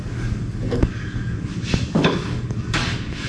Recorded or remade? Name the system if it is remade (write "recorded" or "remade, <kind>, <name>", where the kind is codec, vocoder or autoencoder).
remade, codec, DAC